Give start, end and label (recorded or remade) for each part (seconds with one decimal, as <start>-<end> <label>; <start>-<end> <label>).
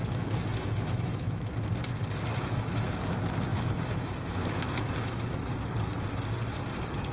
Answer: 0.0-1.5 remade; 1.5-2.3 recorded; 2.3-3.0 remade; 3.0-3.5 recorded; 3.5-5.4 remade; 5.4-7.1 recorded